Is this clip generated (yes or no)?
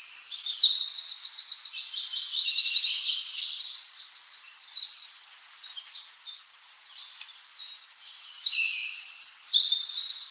yes